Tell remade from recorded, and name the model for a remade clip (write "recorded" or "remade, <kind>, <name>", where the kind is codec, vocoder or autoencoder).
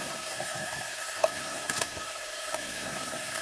remade, codec, SNAC